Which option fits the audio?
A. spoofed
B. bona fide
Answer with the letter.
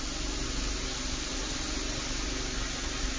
B